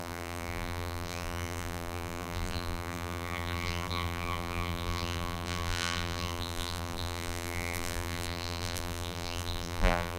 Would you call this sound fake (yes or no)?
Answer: yes